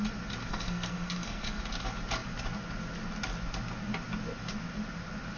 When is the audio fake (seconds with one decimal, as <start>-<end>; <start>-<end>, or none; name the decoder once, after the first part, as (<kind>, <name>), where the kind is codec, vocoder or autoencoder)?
0.5-1.6 (codec, SNAC)